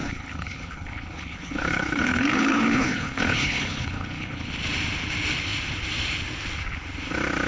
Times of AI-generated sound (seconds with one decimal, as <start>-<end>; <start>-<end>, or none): 0.0-4.5

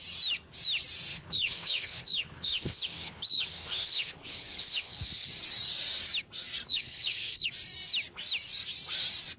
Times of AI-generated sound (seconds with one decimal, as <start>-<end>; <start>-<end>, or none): 1.1-5.3; 6.7-7.5